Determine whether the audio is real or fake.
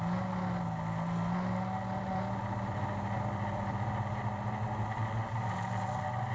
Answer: real